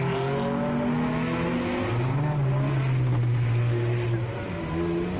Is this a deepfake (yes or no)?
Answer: no